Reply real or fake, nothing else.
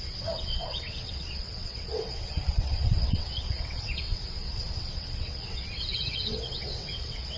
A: fake